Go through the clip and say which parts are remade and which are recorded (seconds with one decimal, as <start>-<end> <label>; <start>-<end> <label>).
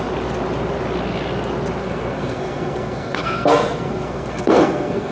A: 0.0-1.8 recorded; 1.8-5.1 remade